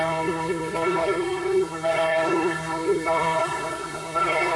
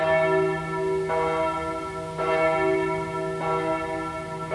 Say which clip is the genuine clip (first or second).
second